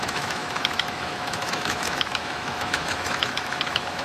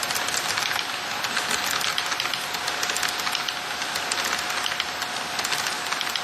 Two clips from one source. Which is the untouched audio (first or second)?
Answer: second